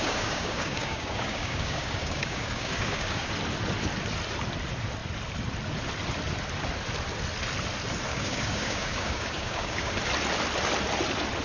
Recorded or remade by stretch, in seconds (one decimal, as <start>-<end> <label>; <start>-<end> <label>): 0.0-3.3 remade; 3.3-8.1 recorded; 8.1-9.9 remade; 9.9-11.4 recorded